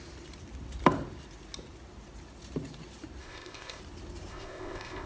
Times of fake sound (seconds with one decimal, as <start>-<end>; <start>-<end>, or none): 3.2-3.8; 4.3-5.1